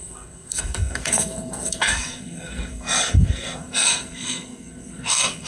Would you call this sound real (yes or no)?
no